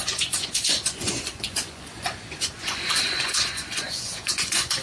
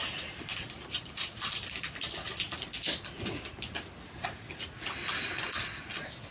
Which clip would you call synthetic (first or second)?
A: first